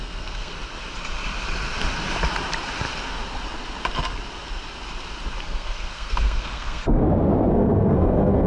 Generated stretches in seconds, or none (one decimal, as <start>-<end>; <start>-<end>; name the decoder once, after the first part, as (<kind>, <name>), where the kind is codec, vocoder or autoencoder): 0.0-0.5 (codec, SNAC); 5.4-7.0; 7.5-8.5